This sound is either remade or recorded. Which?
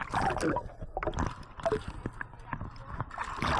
recorded